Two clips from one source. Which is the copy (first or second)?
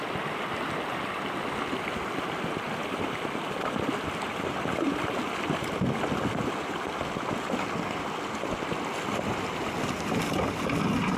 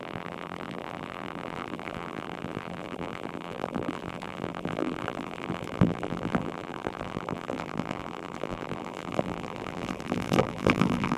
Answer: second